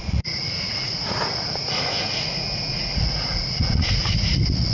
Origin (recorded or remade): remade